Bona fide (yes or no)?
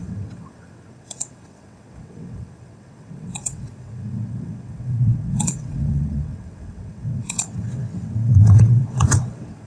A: no